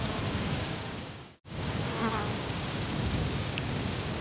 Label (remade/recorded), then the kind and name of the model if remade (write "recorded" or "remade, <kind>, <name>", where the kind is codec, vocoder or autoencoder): remade, codec, DAC